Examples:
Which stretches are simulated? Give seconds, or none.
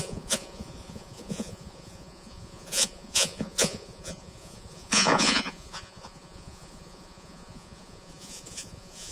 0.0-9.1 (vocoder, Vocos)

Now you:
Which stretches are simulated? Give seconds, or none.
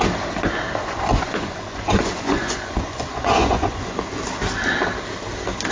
0.8-4.2 (vocoder, Vocos)